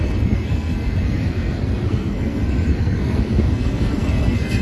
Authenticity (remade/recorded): remade